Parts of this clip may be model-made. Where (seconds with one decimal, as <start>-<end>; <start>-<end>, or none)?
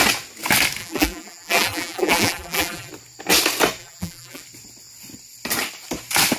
0.8-2.9; 3.8-4.4